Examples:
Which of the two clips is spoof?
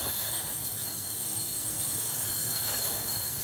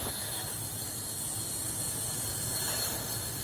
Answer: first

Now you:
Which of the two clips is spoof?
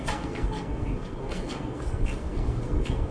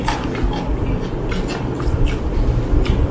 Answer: first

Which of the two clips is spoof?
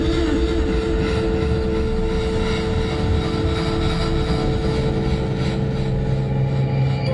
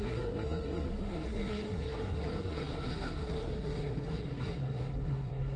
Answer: second